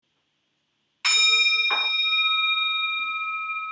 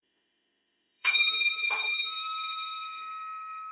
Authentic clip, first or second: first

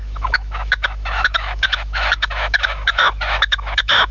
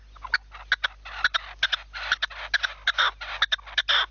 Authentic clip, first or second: second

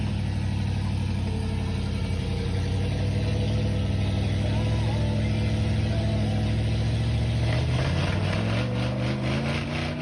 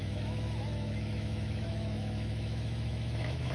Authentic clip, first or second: first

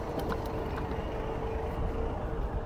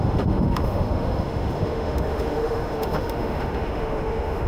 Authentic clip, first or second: first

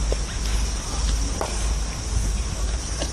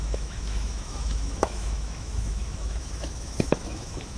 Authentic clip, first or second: first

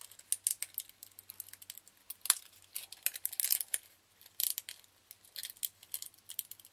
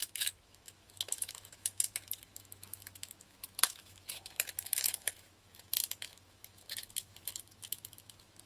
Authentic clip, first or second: first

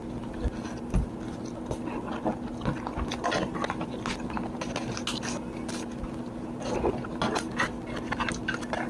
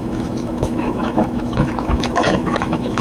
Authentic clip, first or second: first